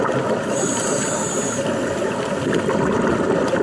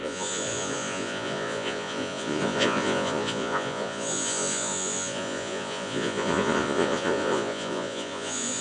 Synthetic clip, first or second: second